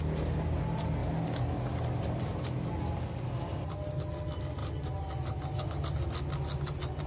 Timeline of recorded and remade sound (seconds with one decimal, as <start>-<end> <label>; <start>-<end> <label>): 0.0-7.1 recorded